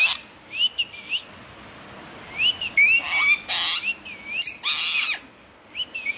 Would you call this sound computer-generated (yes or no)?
no